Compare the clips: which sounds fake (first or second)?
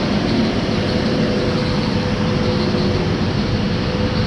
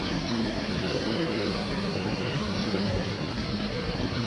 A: second